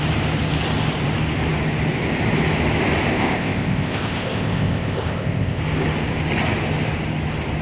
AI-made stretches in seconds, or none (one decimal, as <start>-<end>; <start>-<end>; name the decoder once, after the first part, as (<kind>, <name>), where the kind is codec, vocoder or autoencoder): 3.1-5.6 (codec, ZipCodec)